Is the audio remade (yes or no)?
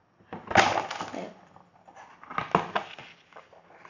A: no